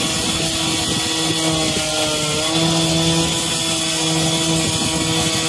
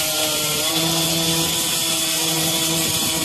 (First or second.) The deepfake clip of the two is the second